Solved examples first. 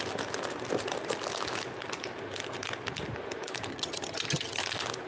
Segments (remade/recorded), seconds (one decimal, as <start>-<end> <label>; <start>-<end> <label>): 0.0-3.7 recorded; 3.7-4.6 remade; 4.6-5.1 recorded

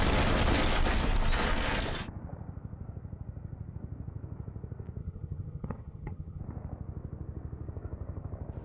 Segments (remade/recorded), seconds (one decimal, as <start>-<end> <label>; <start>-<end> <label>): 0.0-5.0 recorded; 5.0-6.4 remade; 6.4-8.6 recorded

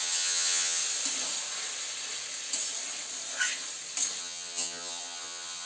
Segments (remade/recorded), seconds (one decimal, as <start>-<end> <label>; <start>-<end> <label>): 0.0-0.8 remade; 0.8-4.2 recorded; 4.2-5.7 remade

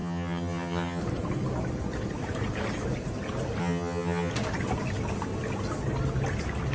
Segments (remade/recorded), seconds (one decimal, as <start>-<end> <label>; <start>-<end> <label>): 0.0-1.0 remade; 1.0-3.6 recorded; 3.6-4.3 remade; 4.3-6.7 recorded

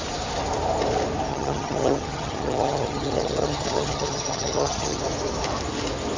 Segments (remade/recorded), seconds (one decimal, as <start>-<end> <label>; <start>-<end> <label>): 0.0-1.3 recorded; 1.3-5.0 remade; 5.0-6.2 recorded

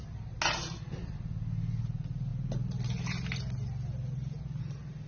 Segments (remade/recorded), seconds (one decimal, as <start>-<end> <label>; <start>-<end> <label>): 0.0-5.1 recorded